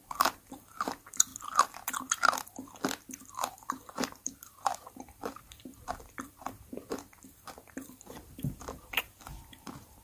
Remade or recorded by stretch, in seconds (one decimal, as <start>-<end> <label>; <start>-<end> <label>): 0.0-1.3 remade; 1.3-3.3 recorded; 3.3-10.0 remade